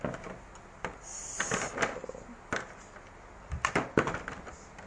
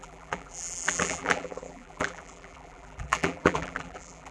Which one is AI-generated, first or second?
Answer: second